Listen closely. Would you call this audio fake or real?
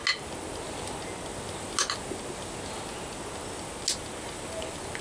real